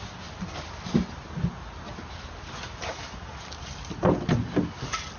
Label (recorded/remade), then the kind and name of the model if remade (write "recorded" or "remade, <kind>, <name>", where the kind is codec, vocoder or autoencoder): recorded